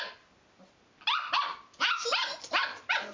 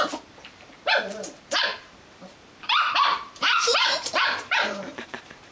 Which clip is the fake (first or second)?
second